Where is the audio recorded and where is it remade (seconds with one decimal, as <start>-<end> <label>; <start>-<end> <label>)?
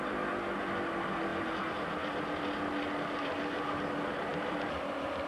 0.0-4.3 recorded; 4.3-5.3 remade